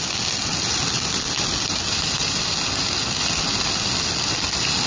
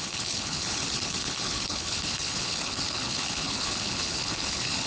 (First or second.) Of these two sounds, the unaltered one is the first